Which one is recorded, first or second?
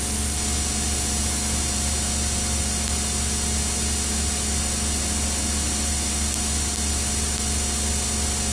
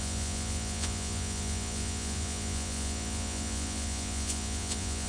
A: first